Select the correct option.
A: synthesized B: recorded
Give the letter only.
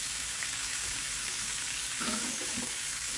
A